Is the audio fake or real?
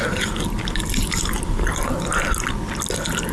real